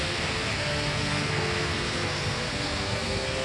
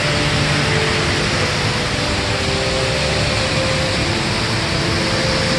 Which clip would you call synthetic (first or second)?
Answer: first